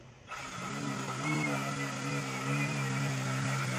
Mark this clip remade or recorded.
recorded